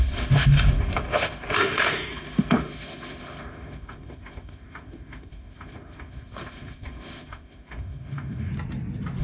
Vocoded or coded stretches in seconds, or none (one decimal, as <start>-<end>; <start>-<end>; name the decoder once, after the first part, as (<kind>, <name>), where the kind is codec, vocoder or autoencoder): 0.0-8.5 (autoencoder, DAC-VAE)